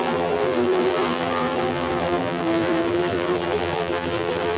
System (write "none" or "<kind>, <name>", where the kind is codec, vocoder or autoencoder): vocoder, BigVGAN v2